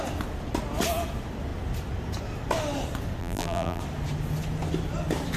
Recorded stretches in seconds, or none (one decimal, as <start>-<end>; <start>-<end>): 0.0-3.2; 3.8-5.4